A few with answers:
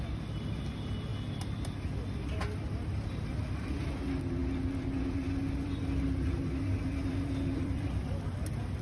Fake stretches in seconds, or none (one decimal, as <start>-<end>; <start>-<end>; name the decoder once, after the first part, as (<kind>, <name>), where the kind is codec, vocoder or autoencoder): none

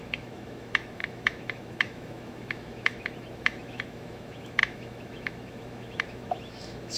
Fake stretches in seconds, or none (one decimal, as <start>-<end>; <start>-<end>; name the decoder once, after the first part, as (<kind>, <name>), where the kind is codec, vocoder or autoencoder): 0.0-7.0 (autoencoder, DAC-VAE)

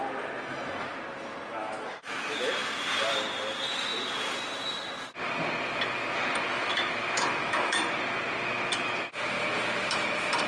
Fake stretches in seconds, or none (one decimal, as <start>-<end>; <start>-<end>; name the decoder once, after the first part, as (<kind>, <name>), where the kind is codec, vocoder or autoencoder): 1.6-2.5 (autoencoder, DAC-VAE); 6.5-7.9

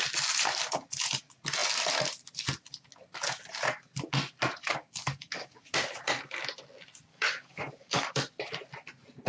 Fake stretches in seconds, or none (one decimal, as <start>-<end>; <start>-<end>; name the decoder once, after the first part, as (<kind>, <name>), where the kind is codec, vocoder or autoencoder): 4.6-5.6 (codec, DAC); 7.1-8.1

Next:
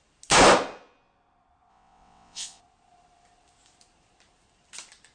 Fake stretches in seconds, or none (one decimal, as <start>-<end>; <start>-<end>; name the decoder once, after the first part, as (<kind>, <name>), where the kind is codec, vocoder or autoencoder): 1.7-2.6 (vocoder, WaveNeXt)

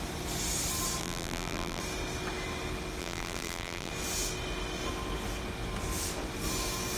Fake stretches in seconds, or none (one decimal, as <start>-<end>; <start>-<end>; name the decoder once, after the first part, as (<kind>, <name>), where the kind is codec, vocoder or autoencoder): 1.0-1.8 (vocoder, BigVGAN v2); 3.0-3.9